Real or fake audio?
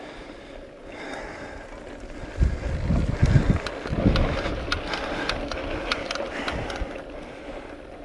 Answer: real